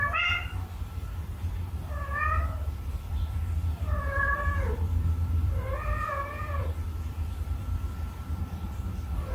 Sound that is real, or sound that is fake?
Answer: fake